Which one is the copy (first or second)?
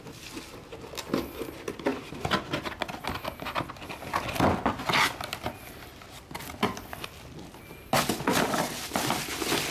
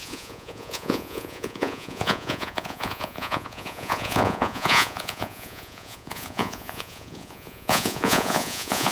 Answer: second